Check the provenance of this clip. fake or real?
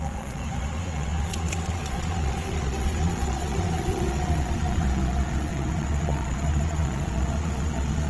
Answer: fake